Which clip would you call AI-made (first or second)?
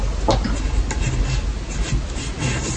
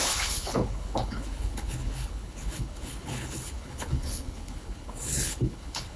second